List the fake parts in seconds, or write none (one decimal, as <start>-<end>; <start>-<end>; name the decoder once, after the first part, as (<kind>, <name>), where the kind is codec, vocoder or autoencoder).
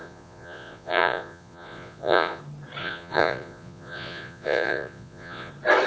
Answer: 0.0-2.4 (vocoder, Vocos); 2.8-5.5